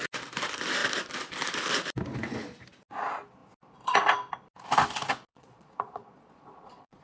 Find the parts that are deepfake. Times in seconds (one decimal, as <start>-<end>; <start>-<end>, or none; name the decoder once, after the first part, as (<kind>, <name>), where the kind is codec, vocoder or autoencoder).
5.3-7.0 (vocoder, Vocos)